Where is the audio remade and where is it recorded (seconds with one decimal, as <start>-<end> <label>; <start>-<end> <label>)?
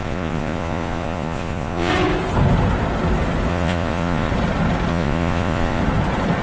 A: 0.0-1.9 remade; 1.9-3.5 recorded; 3.5-4.3 remade; 4.3-4.9 recorded; 4.9-5.8 remade; 5.8-6.4 recorded